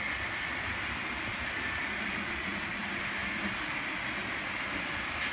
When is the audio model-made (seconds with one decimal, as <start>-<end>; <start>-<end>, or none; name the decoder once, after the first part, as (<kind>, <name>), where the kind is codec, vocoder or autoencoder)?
1.8-2.8 (vocoder, Vocos)

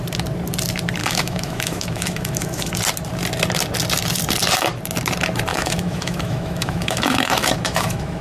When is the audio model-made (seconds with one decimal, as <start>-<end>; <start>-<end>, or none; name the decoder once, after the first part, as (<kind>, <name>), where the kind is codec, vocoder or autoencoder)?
1.0-2.7 (autoencoder, DAC-VAE); 5.5-8.2